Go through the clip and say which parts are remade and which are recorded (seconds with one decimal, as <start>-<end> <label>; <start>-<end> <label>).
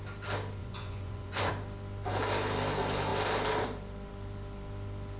0.0-0.6 recorded; 0.6-1.5 remade; 1.5-5.2 recorded